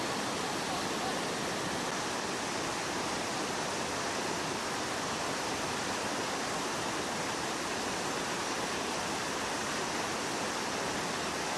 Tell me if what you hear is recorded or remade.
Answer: recorded